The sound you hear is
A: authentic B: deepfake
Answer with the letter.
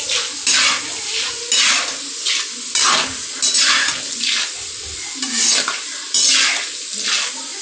A